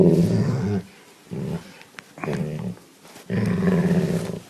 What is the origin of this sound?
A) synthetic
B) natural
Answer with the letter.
B